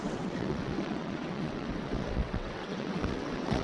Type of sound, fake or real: fake